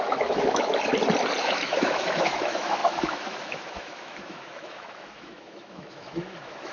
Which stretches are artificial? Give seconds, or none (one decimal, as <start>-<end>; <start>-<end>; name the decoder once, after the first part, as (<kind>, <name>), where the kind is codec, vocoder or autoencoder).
0.0-0.9 (autoencoder, DAC-VAE); 1.4-6.7